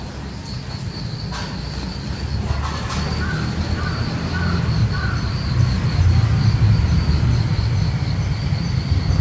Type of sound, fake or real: real